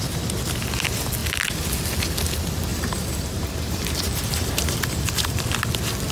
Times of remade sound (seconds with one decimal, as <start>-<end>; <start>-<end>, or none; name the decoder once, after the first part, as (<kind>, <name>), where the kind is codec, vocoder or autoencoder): 2.7-5.4 (vocoder, BigVGAN v2)